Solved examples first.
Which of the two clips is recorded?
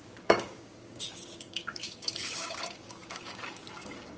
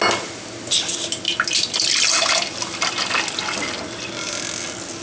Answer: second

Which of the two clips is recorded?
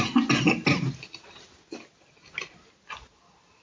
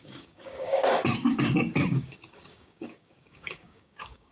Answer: first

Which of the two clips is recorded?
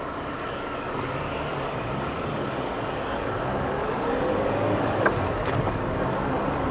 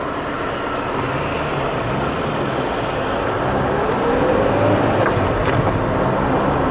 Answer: second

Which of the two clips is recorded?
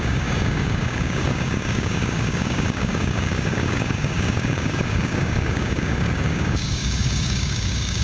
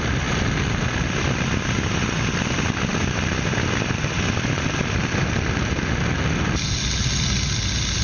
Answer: second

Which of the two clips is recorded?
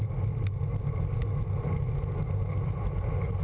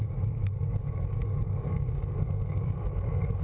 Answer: first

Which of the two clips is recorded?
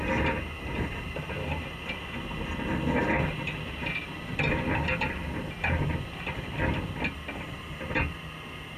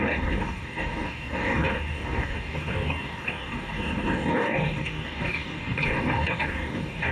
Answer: first